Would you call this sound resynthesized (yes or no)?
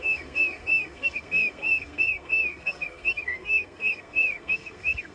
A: yes